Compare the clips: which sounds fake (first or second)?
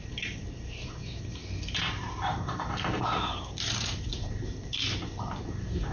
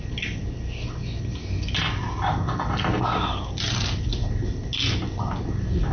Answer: first